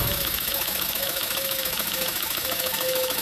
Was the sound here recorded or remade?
remade